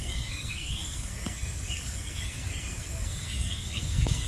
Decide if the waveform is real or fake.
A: fake